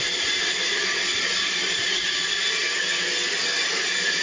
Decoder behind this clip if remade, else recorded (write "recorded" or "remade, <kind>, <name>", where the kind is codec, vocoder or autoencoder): remade, vocoder, BigVGAN v2